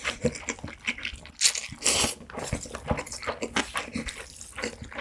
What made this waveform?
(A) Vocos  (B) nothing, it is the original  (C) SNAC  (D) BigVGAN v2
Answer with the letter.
B